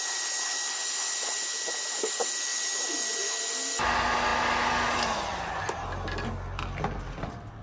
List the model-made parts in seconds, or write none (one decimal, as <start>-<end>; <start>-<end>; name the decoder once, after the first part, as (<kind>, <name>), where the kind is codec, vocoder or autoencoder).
none